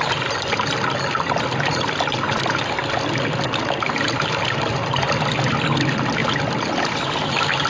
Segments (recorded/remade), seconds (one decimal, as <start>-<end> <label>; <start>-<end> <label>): 0.0-7.7 recorded